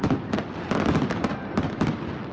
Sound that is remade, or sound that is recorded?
recorded